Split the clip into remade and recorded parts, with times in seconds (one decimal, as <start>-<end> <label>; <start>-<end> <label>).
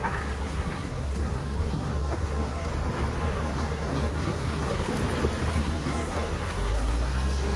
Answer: 0.0-2.7 remade; 2.7-3.2 recorded; 3.2-4.9 remade; 4.9-5.5 recorded; 5.5-7.6 remade